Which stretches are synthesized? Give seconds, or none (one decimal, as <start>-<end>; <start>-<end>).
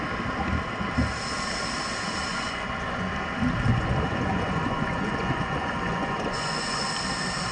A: 2.3-3.1; 3.7-6.9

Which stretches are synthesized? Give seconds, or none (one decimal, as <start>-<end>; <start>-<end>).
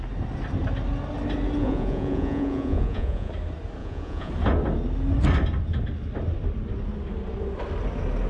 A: 1.6-3.3; 3.8-4.3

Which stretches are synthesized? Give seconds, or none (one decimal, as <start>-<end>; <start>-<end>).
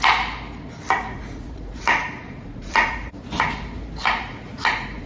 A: 1.1-3.2; 4.0-5.1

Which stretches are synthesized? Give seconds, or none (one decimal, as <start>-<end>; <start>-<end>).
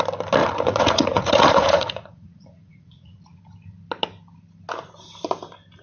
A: 0.4-3.4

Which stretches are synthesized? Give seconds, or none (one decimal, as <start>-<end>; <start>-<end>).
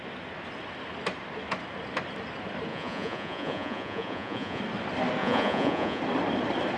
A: 2.7-4.6; 5.2-6.0